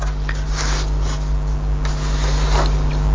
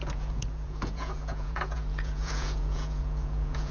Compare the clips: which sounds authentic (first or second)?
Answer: first